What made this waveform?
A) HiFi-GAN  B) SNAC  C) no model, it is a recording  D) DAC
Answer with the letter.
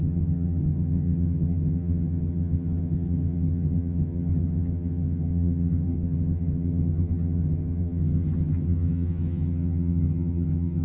A